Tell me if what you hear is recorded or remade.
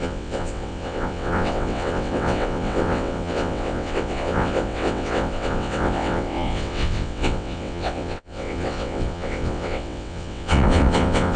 remade